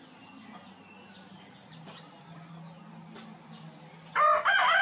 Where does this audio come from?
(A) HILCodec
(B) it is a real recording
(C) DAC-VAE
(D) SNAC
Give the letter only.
B